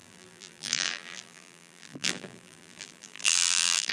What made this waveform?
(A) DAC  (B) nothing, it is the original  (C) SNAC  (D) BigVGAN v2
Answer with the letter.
D